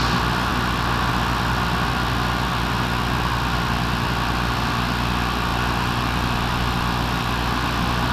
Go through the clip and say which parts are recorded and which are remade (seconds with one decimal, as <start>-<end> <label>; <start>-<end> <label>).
0.0-5.5 recorded; 5.5-8.1 remade